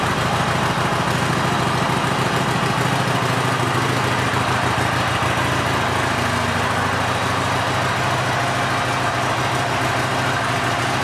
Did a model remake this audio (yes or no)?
no